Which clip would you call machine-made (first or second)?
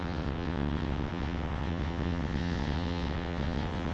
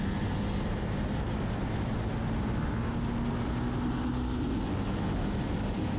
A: first